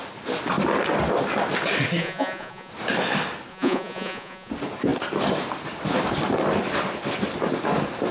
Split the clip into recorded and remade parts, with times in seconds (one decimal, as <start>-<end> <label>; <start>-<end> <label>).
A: 0.0-2.0 recorded; 2.0-2.7 remade; 2.7-3.5 recorded; 3.5-4.5 remade; 4.5-8.1 recorded